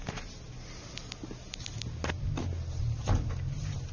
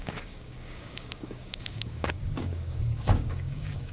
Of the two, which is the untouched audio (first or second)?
first